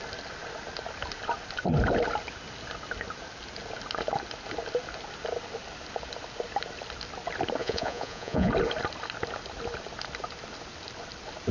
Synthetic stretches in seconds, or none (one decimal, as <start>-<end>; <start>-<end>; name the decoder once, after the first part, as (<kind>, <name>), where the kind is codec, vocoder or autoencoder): 7.6-8.5 (vocoder, Vocos)